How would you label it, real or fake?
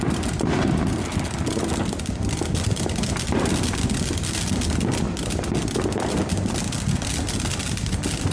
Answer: real